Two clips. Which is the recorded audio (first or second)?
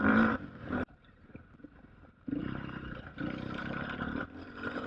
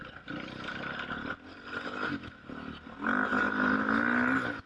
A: second